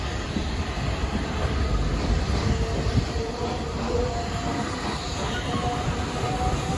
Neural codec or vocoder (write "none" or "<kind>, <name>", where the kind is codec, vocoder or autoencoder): none